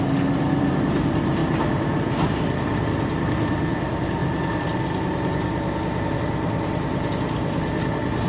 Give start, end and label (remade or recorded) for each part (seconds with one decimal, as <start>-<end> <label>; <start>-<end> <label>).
0.0-1.4 recorded; 1.4-2.0 remade; 2.0-8.3 recorded